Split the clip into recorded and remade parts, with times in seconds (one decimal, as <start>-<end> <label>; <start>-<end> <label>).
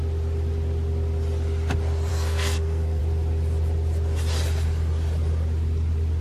0.0-2.1 recorded; 2.1-3.0 remade; 3.0-6.2 recorded